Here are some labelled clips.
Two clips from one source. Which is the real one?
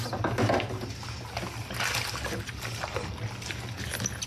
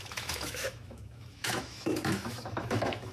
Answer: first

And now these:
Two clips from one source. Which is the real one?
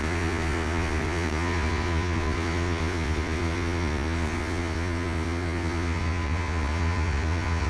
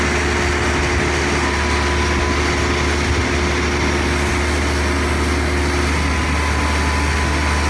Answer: second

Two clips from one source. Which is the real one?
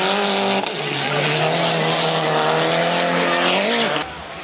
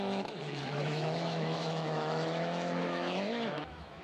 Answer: first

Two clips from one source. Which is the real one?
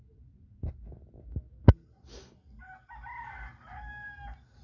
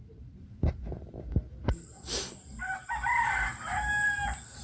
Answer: first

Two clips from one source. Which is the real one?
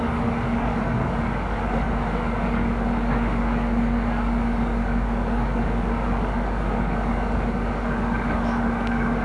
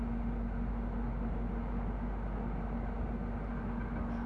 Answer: second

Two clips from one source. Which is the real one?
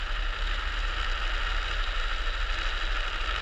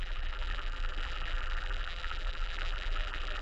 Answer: first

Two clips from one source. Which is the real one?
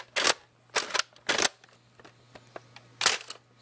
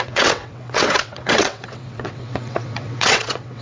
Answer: first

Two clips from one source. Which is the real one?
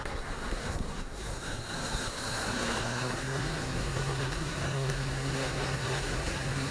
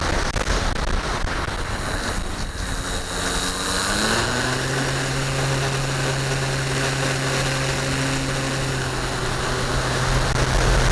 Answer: second